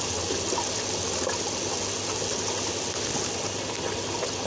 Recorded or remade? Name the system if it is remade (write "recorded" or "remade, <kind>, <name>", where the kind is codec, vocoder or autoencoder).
recorded